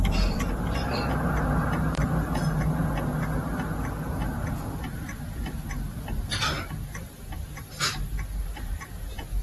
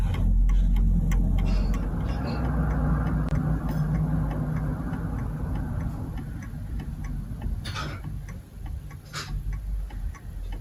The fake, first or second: first